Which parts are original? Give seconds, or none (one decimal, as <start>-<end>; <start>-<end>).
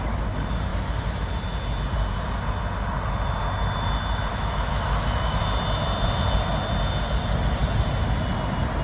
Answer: 0.0-0.7; 1.3-4.3; 5.4-8.8